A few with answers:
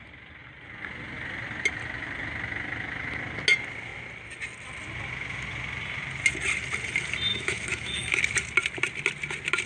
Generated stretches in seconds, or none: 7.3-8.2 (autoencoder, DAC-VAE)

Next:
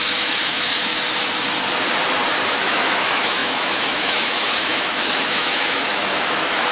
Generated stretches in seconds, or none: 0.0-0.9 (autoencoder, DAC-VAE); 2.5-6.7